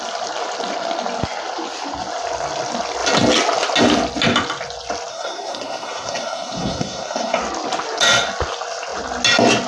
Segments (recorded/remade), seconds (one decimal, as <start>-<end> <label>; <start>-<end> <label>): 0.0-5.1 recorded; 5.1-7.4 remade; 7.4-9.7 recorded